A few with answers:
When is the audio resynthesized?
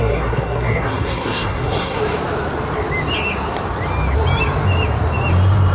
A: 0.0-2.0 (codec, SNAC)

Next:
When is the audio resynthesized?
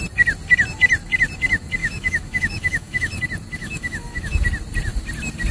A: 1.8-3.2 (autoencoder, DAC-VAE); 3.6-4.4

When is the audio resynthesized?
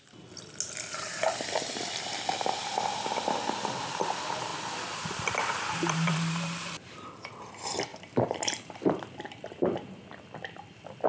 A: 4.5-7.3 (vocoder, BigVGAN v2); 7.9-10.0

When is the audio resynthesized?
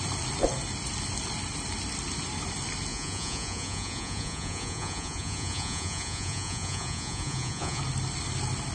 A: 2.9-7.8 (vocoder, Vocos)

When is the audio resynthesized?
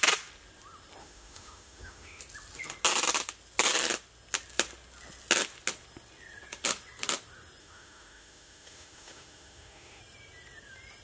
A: 1.0-2.2 (autoencoder, DAC-VAE); 7.6-10.0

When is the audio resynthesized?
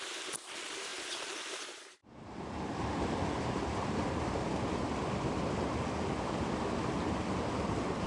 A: none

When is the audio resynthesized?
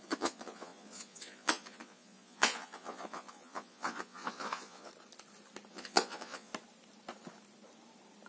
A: 0.0-4.9 (vocoder, Vocos); 5.7-6.5